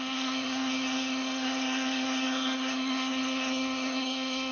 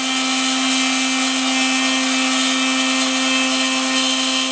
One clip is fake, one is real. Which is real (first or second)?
second